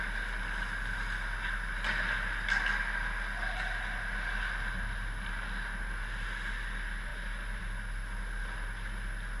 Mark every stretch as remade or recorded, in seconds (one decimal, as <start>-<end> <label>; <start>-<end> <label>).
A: 0.0-9.4 recorded